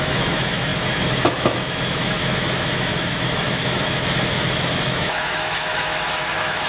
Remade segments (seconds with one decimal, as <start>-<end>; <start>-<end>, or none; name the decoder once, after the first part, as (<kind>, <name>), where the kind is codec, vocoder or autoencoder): 0.0-6.7 (autoencoder, DAC-VAE)